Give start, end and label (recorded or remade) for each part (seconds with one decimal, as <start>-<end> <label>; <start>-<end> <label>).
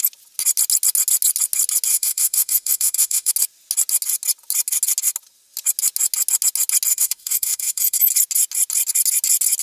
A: 0.0-1.9 recorded; 1.9-3.3 remade; 3.3-6.9 recorded; 6.9-8.1 remade; 8.1-9.6 recorded